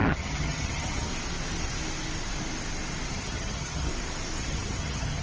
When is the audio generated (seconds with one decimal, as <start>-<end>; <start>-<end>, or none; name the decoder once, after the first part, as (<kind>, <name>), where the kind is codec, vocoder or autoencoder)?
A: 0.0-1.1 (vocoder, HiFi-GAN); 3.1-3.9; 4.4-5.2